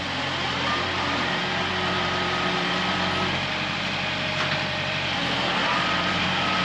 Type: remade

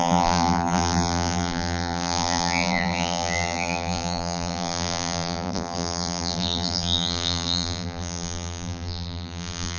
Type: remade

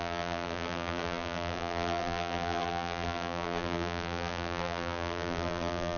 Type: remade